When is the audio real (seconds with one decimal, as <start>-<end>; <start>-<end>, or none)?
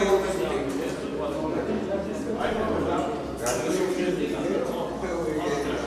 0.0-5.9